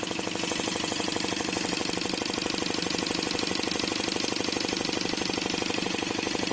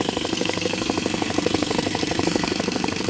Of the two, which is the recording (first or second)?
first